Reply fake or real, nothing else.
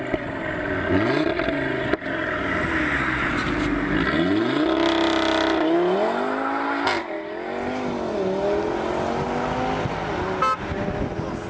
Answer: real